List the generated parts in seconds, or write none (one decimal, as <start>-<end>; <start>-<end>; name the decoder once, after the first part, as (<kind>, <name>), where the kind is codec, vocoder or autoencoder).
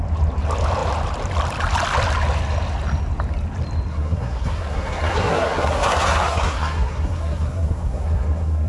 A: 3.9-8.7 (codec, SNAC)